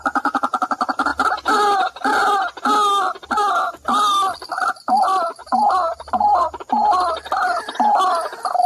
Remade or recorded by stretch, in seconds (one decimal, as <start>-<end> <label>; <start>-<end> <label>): 0.0-5.4 recorded; 5.4-6.9 remade; 6.9-8.7 recorded

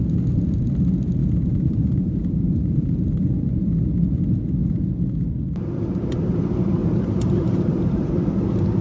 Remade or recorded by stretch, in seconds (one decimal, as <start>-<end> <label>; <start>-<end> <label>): 0.0-1.2 recorded; 1.2-3.3 remade; 3.3-6.8 recorded; 6.8-8.1 remade; 8.1-8.8 recorded